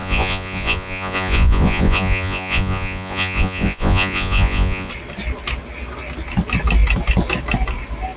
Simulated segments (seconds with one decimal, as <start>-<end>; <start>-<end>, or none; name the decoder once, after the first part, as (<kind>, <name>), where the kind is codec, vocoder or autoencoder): 0.0-4.9 (vocoder, Vocos)